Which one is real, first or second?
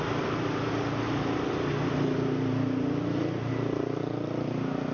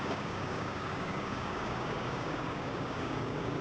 first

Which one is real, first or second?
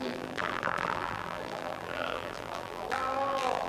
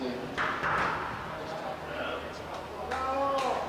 second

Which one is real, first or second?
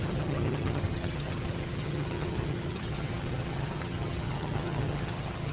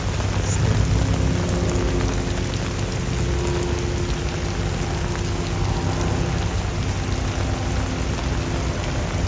second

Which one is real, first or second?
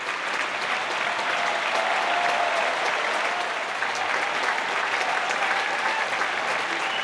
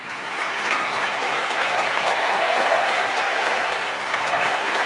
first